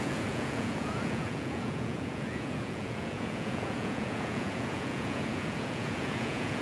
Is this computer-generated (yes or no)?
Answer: yes